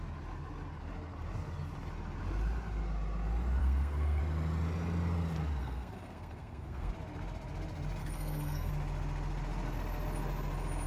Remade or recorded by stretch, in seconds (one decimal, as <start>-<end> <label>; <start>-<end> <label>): 0.0-3.6 recorded; 3.6-4.2 remade; 4.2-5.6 recorded; 5.6-6.9 remade; 6.9-8.0 recorded; 8.0-8.7 remade; 8.7-10.9 recorded